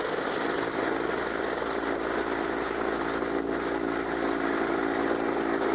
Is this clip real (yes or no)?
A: yes